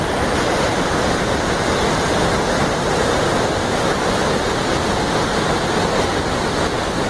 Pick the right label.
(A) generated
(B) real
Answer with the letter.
B